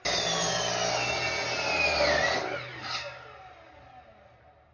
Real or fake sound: real